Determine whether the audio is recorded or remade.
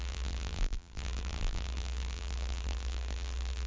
remade